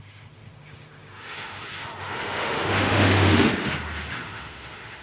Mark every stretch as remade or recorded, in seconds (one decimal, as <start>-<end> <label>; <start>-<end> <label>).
0.0-5.0 remade